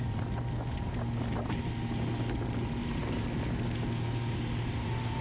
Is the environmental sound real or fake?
real